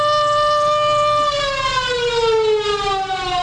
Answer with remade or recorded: recorded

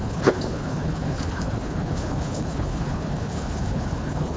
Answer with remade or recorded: remade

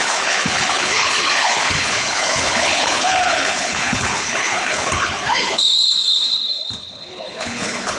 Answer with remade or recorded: remade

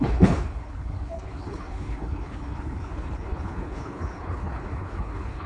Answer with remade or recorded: remade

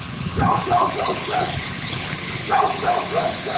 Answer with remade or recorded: remade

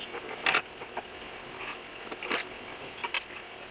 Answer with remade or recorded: recorded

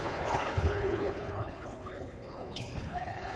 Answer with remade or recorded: remade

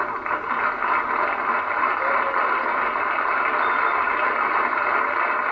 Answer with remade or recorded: recorded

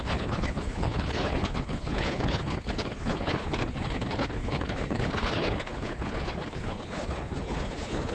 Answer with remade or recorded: remade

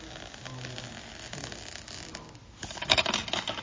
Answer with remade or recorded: recorded